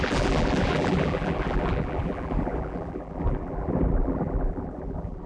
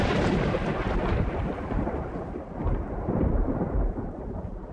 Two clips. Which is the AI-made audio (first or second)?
first